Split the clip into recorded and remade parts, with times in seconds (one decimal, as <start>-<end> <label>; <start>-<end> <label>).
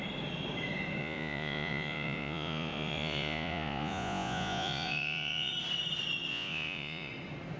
0.0-1.0 recorded; 1.0-5.5 remade; 5.5-6.3 recorded; 6.3-7.1 remade; 7.1-7.6 recorded